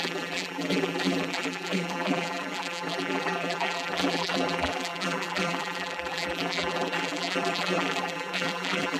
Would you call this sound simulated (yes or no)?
yes